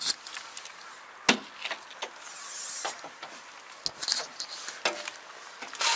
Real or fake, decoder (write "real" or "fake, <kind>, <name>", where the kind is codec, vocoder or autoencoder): real